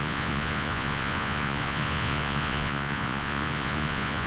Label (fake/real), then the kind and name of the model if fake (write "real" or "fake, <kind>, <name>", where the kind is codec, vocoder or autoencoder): fake, vocoder, Vocos